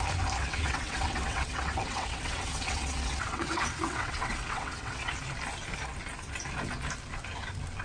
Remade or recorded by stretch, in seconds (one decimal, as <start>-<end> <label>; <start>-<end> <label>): 0.0-0.4 recorded; 0.4-5.1 remade; 5.1-7.8 recorded